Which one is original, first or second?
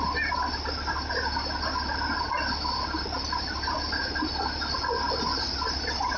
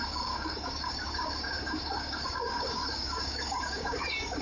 first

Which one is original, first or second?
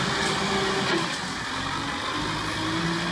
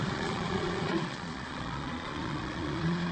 first